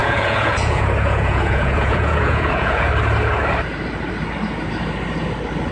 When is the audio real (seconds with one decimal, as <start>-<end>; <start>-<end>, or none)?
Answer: 2.9-5.7